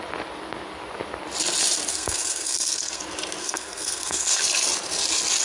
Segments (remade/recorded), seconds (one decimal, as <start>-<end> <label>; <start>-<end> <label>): 0.0-1.9 recorded; 1.9-3.0 remade; 3.0-3.4 recorded; 3.4-4.4 remade; 4.4-5.4 recorded